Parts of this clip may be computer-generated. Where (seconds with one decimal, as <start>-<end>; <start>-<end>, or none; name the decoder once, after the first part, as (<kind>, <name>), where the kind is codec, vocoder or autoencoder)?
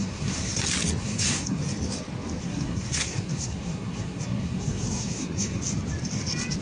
0.0-0.6 (codec, SNAC); 1.0-1.6; 2.4-5.6